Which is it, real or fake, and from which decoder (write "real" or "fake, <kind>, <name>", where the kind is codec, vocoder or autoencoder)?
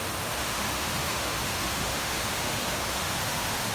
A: fake, autoencoder, DAC-VAE